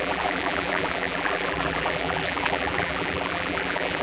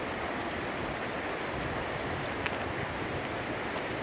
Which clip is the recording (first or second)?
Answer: second